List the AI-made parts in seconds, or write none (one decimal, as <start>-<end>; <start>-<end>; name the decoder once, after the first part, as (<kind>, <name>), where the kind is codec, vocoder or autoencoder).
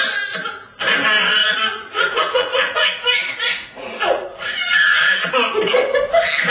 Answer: 1.4-5.3 (vocoder, Vocos)